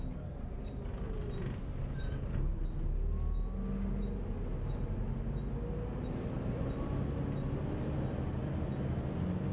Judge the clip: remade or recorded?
recorded